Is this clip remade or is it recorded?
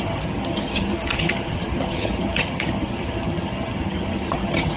remade